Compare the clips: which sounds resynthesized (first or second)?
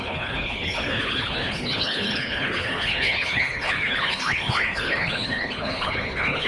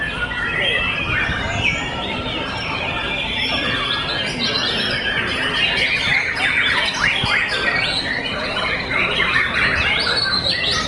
first